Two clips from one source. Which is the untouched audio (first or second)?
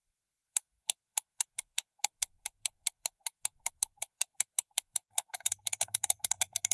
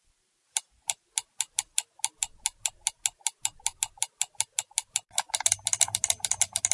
second